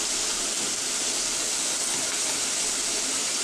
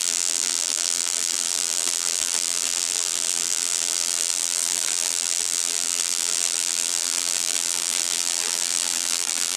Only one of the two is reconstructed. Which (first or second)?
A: second